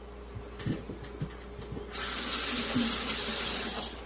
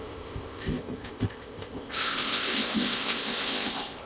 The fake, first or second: second